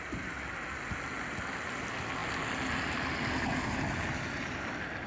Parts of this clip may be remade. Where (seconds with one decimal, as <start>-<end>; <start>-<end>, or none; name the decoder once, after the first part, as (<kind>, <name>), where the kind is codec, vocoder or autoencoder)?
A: none